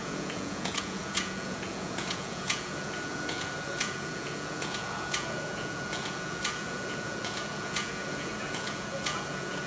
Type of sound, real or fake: fake